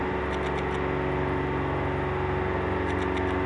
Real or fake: real